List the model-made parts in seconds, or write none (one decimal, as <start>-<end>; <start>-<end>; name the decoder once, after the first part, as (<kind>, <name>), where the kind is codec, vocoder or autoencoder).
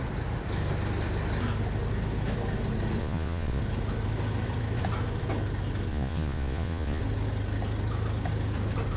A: 3.0-3.6 (vocoder, Vocos); 5.9-7.0